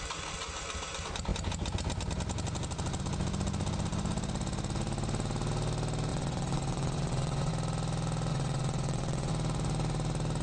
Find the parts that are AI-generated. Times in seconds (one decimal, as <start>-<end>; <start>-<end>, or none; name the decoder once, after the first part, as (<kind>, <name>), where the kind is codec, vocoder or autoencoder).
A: 6.1-7.5 (vocoder, WaveNeXt); 8.3-9.3